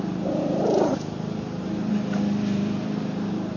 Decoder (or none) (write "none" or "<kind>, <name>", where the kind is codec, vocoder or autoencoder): vocoder, BigVGAN v2